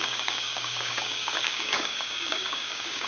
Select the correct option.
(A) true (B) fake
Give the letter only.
B